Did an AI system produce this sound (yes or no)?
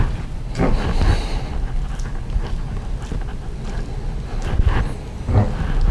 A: no